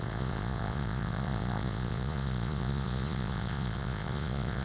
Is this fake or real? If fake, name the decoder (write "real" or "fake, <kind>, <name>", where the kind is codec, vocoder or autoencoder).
fake, vocoder, Vocos